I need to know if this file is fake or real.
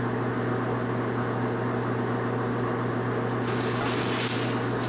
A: real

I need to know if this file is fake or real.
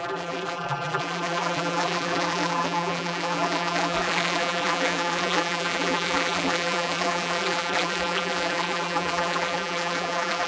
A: fake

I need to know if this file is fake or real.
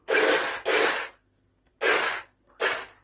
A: real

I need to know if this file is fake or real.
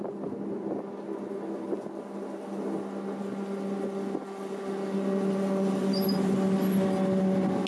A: real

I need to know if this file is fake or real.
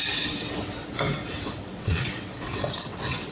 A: fake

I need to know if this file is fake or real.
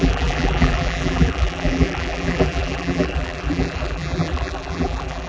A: fake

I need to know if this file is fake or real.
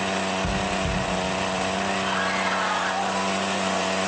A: real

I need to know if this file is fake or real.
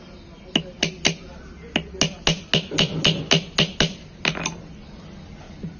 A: real